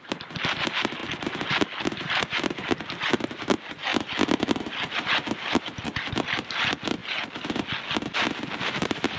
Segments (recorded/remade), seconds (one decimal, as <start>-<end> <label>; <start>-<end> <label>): 0.0-9.2 recorded

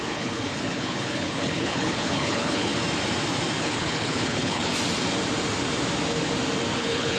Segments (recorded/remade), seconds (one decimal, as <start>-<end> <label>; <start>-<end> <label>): 0.0-2.7 remade; 2.7-3.6 recorded; 3.6-4.7 remade; 4.7-6.8 recorded; 6.8-7.2 remade